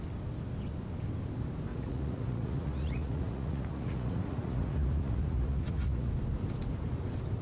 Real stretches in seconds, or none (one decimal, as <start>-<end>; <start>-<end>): 0.0-1.7; 6.1-7.4